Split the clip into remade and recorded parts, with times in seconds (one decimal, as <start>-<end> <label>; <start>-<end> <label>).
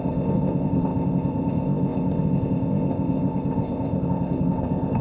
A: 0.0-5.0 remade